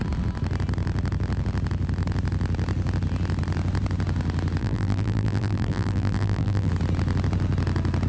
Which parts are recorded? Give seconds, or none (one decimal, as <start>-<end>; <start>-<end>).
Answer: 0.0-4.6; 6.7-8.1